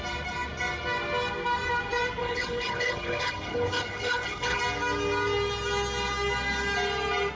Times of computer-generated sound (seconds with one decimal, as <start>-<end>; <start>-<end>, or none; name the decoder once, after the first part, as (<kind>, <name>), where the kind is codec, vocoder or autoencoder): 2.2-4.6 (codec, HILCodec)